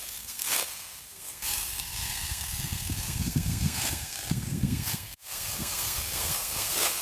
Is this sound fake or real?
fake